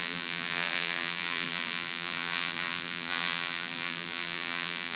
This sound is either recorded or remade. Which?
remade